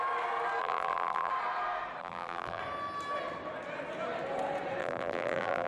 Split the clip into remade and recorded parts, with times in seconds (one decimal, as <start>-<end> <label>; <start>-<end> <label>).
0.0-0.6 recorded; 0.6-1.3 remade; 1.3-2.0 recorded; 2.0-2.6 remade; 2.6-4.8 recorded; 4.8-5.7 remade